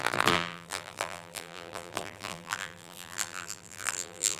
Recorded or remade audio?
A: remade